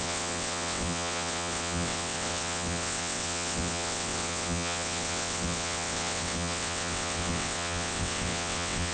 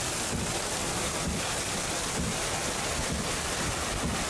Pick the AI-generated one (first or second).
first